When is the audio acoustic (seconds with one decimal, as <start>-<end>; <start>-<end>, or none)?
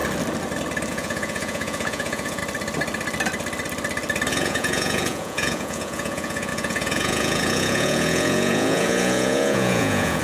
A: 0.0-0.9; 2.4-4.3